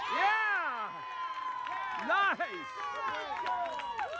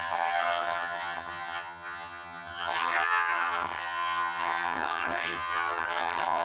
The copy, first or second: second